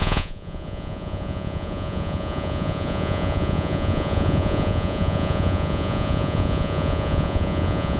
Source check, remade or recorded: remade